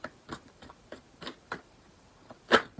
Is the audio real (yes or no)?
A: yes